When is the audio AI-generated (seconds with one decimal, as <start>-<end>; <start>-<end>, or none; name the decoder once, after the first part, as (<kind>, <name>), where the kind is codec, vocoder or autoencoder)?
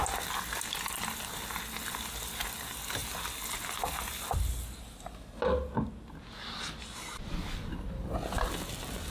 none